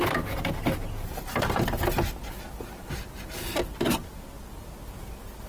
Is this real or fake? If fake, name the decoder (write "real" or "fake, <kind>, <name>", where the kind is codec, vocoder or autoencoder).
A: real